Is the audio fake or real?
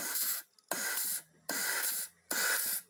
real